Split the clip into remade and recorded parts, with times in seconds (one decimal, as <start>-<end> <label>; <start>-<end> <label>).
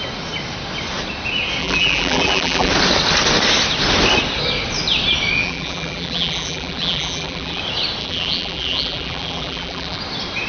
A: 0.0-1.6 recorded; 1.6-2.7 remade; 2.7-5.4 recorded; 5.4-7.6 remade; 7.6-8.0 recorded; 8.0-10.0 remade; 10.0-10.5 recorded